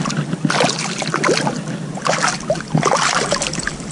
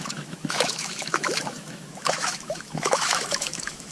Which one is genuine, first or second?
first